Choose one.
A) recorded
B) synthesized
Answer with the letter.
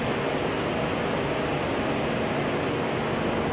A